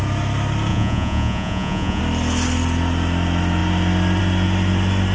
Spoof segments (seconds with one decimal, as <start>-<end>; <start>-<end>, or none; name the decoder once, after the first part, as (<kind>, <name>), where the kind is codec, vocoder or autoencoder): 0.7-2.0 (vocoder, Vocos)